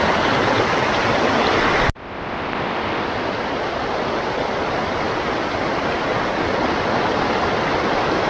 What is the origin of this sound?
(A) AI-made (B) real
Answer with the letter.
B